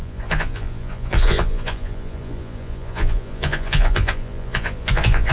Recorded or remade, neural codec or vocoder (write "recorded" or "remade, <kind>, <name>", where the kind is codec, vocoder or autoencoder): remade, vocoder, Vocos